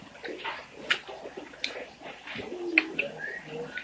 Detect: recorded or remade recorded